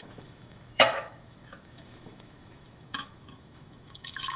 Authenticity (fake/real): fake